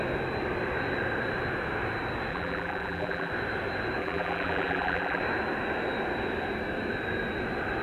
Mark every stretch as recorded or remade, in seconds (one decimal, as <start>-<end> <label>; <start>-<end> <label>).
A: 0.0-2.3 recorded; 2.3-3.3 remade; 3.3-4.0 recorded; 4.0-5.2 remade; 5.2-7.8 recorded